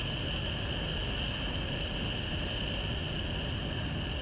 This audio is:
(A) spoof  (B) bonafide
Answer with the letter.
B